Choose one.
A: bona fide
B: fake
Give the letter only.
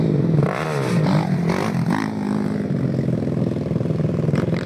A